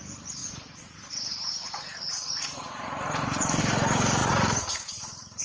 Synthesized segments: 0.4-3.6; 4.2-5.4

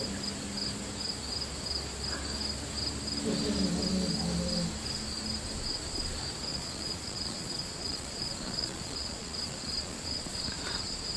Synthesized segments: 6.5-11.2